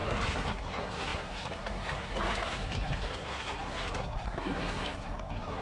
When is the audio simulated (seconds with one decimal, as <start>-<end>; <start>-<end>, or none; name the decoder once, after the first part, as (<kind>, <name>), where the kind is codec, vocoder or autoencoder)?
0.0-5.6 (codec, SNAC)